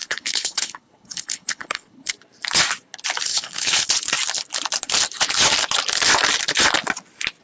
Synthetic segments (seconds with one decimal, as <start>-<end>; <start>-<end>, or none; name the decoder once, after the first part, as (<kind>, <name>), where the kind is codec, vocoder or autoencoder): 0.0-2.1 (codec, HILCodec); 3.3-3.9